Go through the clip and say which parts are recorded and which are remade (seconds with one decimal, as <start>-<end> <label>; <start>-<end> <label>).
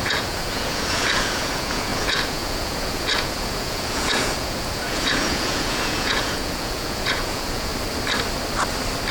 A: 0.0-7.7 remade; 7.7-9.1 recorded